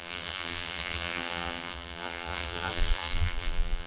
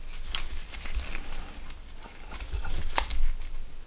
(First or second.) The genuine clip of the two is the second